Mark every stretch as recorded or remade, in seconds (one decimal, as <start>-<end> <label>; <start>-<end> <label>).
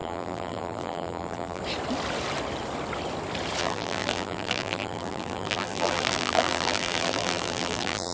0.0-1.6 remade; 1.6-3.6 recorded; 3.6-8.1 remade